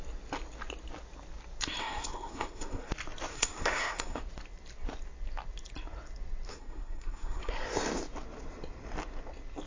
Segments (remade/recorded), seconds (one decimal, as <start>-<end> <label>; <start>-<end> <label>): 0.0-1.8 recorded; 1.8-2.9 remade; 2.9-3.3 recorded; 3.3-4.2 remade; 4.2-6.5 recorded; 6.5-7.5 remade; 7.5-9.7 recorded